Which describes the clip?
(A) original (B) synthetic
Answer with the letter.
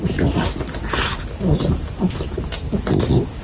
A